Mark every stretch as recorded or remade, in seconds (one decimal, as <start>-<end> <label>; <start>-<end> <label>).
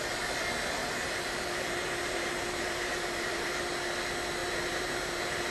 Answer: 0.0-0.8 recorded; 0.8-3.6 remade; 3.6-4.4 recorded; 4.4-5.5 remade